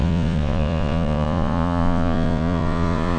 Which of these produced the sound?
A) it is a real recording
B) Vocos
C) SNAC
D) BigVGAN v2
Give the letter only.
B